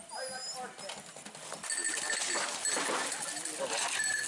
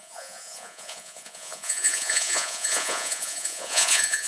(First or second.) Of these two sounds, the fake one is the second